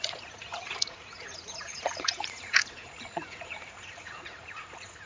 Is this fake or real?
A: fake